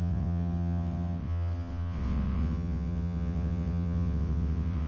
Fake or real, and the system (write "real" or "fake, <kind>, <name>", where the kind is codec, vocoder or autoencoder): fake, vocoder, WaveNeXt